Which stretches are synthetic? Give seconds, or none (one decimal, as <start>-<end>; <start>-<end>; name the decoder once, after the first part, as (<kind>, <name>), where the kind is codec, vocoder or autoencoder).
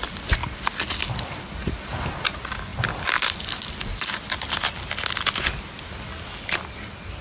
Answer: none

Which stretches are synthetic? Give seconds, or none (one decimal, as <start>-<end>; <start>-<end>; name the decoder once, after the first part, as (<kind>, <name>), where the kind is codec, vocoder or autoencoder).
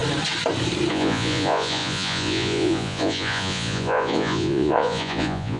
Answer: 0.9-5.6 (vocoder, Vocos)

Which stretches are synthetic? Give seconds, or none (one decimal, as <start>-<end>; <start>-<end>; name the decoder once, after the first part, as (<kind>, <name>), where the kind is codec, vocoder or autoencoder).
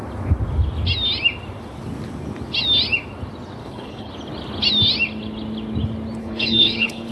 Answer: 3.6-4.1 (codec, HILCodec); 6.2-7.1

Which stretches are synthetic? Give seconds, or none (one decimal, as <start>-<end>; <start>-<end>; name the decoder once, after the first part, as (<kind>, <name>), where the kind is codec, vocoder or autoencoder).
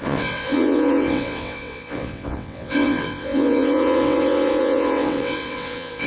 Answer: 0.0-6.1 (vocoder, WaveNeXt)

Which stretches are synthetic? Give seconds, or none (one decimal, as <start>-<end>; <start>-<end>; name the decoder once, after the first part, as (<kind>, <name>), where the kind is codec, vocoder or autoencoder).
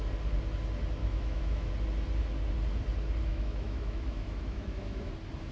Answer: 1.0-1.7 (autoencoder, DAC-VAE); 3.2-5.1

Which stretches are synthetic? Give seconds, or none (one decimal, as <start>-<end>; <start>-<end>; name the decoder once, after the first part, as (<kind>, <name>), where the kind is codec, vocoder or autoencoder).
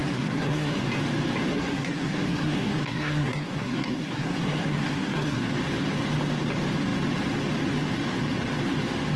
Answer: 0.0-0.8 (codec, SNAC); 1.5-5.4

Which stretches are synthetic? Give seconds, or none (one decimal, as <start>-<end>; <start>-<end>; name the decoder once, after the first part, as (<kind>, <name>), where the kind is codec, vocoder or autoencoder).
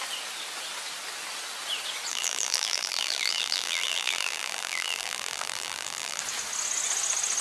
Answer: 2.1-6.2 (vocoder, BigVGAN v2)